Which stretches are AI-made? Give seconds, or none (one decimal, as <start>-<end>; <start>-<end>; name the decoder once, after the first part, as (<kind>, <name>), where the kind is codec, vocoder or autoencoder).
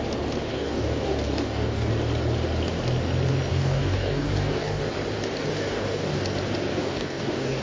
0.5-1.9 (codec, DAC); 3.5-4.8; 5.5-6.2; 6.7-7.6